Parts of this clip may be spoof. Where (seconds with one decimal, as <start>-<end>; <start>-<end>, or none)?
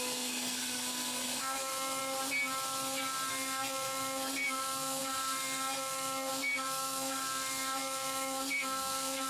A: 0.0-2.0; 3.3-9.3